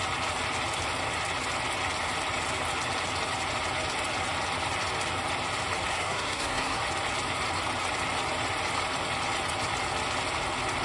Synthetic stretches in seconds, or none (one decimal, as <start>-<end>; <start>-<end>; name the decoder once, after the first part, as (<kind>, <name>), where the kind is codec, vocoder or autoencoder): 5.9-6.8 (codec, SNAC)

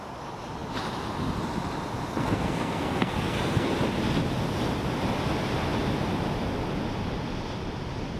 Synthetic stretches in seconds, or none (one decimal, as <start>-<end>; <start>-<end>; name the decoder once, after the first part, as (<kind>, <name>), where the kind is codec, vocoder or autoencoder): 2.1-3.7 (codec, SNAC)

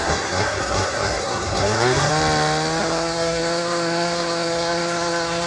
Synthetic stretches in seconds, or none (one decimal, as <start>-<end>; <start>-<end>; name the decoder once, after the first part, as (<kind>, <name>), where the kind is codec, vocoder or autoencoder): 0.0-2.1 (codec, SNAC); 2.8-5.5

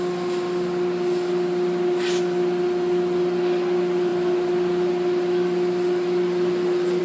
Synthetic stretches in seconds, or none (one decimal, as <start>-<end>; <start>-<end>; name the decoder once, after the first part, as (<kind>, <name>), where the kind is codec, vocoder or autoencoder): none

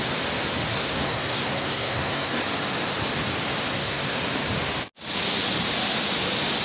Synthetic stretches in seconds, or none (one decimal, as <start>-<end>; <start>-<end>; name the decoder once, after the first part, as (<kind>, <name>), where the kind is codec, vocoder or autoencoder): 0.7-2.4 (codec, SNAC); 3.7-4.2

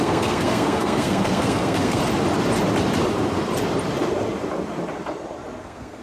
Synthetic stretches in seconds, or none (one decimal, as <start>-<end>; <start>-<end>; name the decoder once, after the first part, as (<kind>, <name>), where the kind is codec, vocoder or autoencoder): 0.0-2.0 (codec, SNAC); 5.6-6.0

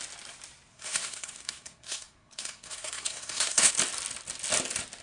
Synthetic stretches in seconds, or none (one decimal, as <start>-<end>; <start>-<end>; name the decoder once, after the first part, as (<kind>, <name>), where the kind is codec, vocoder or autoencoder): 0.7-3.7 (codec, SNAC)